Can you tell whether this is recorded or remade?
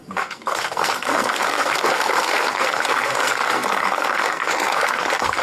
remade